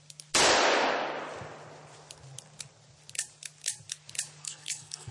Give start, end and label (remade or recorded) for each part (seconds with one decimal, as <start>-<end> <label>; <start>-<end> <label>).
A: 0.0-4.4 recorded; 4.4-5.1 remade